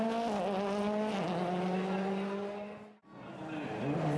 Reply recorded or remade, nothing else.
recorded